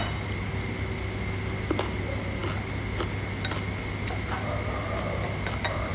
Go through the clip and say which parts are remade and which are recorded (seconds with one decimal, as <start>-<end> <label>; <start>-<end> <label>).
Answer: 0.0-5.9 recorded